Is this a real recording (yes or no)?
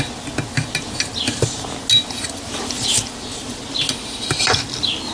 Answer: yes